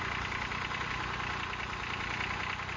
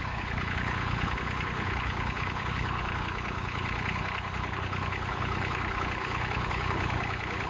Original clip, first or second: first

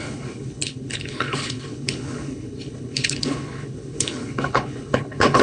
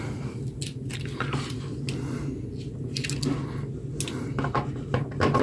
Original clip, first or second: second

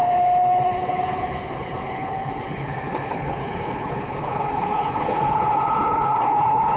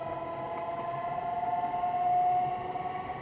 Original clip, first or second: second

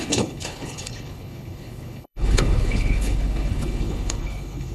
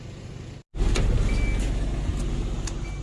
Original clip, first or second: second